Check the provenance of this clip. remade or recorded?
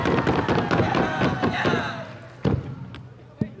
recorded